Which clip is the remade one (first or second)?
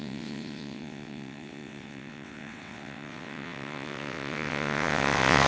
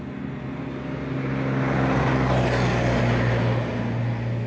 first